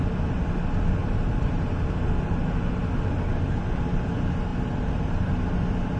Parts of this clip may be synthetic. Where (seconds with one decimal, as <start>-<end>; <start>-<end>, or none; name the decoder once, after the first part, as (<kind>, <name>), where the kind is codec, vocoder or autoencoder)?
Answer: 1.0-1.8 (vocoder, BigVGAN v2); 4.5-5.4